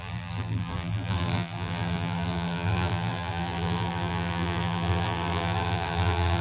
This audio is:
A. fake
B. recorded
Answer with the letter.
A